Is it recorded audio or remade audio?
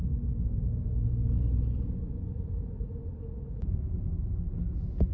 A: recorded